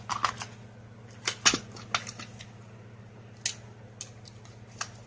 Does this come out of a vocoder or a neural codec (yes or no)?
no